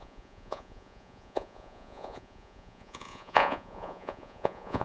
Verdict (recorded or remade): remade